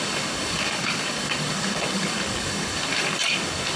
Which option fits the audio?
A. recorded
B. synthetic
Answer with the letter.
B